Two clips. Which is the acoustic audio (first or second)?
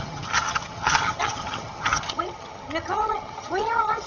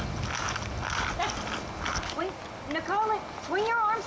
second